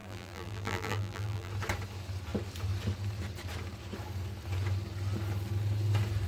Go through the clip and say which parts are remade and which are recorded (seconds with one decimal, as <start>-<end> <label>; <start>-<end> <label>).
0.0-1.5 remade; 1.5-6.3 recorded